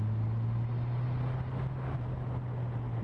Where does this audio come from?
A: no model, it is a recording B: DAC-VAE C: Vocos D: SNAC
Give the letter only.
A